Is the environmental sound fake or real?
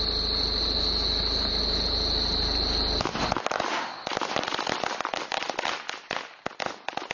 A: real